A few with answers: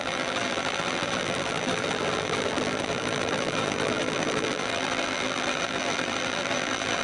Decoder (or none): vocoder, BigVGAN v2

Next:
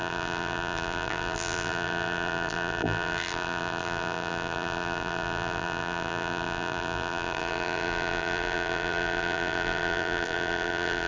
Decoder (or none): vocoder, BigVGAN v2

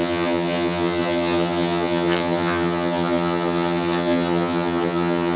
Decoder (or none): vocoder, HiFi-GAN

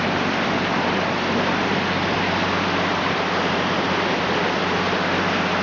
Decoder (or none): none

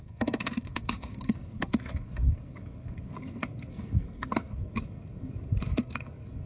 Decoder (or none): codec, SNAC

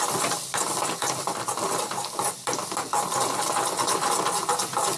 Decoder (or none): none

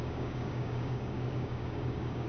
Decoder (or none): codec, DAC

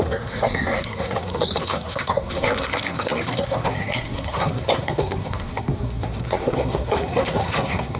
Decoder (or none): codec, SNAC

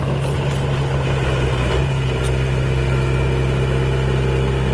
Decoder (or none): none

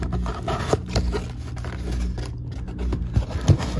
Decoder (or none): none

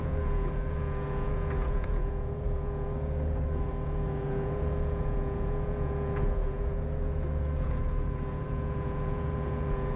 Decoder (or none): vocoder, Vocos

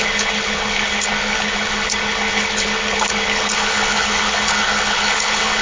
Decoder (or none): codec, HILCodec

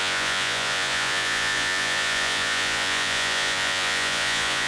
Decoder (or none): vocoder, Vocos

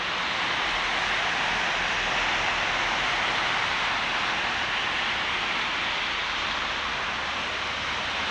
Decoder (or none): none